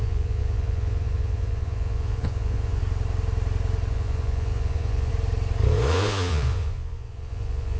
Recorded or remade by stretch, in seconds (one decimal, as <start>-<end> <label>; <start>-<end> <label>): 0.0-2.8 remade; 2.8-3.9 recorded; 3.9-5.1 remade; 5.1-5.9 recorded; 5.9-7.8 remade